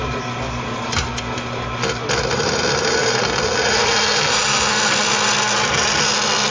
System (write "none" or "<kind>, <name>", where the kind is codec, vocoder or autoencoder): none